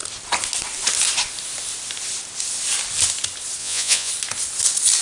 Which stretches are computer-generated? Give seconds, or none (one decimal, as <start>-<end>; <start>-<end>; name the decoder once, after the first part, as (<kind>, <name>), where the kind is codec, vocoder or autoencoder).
3.6-4.1 (vocoder, Vocos)